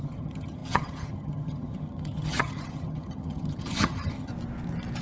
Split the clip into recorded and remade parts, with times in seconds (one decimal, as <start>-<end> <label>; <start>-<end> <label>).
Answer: 0.0-4.3 remade; 4.3-5.0 recorded